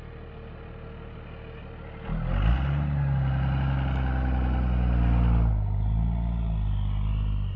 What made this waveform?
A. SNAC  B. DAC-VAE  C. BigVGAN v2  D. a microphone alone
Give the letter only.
D